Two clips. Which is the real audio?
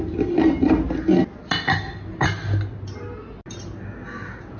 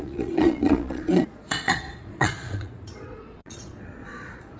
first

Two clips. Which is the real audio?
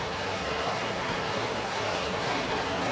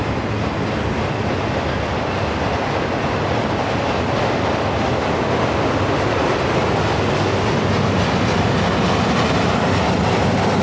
second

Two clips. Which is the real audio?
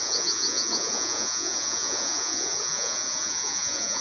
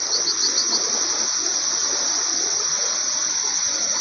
second